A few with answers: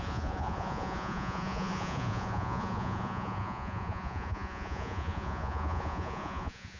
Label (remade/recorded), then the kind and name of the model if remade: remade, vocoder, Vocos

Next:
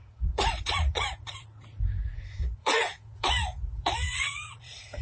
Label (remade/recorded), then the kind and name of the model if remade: remade, vocoder, Vocos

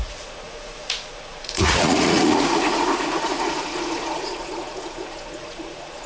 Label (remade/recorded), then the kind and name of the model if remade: remade, vocoder, Vocos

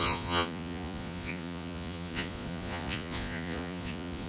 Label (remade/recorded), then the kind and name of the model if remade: remade, vocoder, Vocos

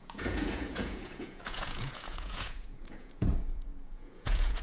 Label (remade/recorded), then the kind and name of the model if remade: remade, vocoder, Vocos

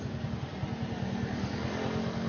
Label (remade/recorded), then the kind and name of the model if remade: recorded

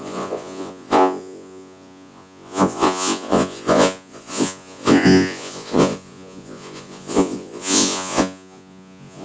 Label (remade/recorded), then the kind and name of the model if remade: remade, vocoder, Vocos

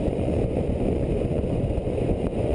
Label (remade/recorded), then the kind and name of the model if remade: remade, vocoder, Vocos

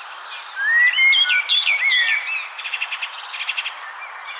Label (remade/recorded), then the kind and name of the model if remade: recorded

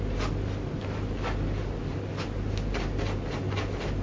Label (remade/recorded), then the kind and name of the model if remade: recorded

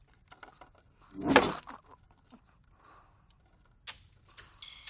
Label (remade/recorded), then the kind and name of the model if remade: recorded